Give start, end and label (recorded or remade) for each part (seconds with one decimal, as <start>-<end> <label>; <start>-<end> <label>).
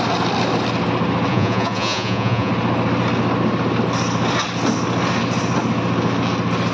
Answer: 0.0-1.3 recorded; 1.3-2.5 remade; 2.5-6.7 recorded